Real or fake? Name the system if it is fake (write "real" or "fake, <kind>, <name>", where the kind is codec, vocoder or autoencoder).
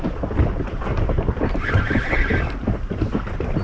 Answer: real